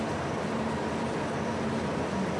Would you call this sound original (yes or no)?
yes